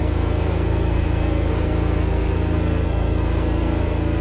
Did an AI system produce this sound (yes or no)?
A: yes